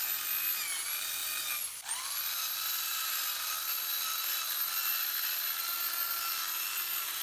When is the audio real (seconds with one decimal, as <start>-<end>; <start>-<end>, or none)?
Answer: 0.0-7.2